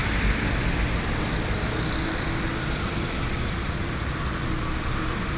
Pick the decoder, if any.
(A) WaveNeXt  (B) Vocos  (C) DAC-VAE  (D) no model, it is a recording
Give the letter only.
D